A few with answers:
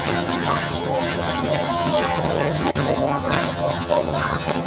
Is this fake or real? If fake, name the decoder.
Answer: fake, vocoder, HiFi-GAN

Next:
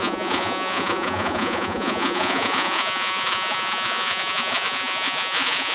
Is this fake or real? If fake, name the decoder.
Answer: fake, vocoder, Vocos